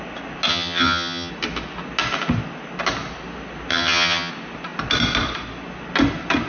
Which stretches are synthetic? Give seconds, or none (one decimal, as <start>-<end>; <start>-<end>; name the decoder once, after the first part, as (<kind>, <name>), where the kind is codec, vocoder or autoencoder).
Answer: 0.5-1.3 (vocoder, HiFi-GAN); 3.7-4.3